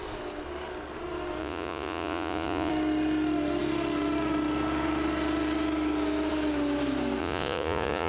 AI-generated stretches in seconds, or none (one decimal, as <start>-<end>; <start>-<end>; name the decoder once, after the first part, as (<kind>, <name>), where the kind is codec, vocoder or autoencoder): 1.4-2.7 (vocoder, Vocos); 7.2-8.1

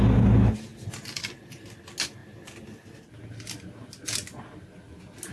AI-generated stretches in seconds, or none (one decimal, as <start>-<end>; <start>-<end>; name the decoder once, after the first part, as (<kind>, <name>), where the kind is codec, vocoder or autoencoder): none

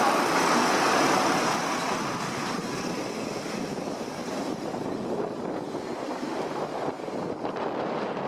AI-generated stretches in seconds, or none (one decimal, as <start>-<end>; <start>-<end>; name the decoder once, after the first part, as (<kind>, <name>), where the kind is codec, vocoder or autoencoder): none

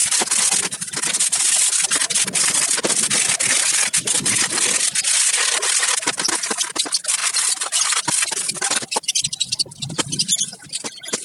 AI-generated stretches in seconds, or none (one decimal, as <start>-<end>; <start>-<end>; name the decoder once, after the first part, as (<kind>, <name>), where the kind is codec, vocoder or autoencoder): 1.5-11.2 (vocoder, BigVGAN v2)

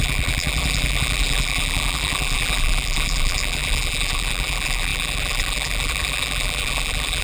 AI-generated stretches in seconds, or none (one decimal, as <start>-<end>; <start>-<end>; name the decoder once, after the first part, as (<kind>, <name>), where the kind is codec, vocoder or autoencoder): 0.0-7.2 (vocoder, BigVGAN v2)